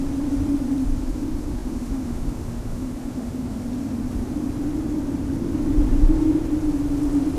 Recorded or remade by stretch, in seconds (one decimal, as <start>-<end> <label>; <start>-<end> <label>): 0.0-1.0 recorded; 1.0-3.6 remade; 3.6-7.4 recorded